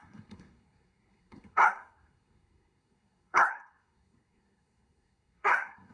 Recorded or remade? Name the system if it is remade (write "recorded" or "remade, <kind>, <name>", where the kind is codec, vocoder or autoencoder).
remade, codec, SNAC